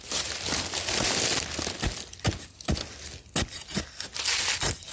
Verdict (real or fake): real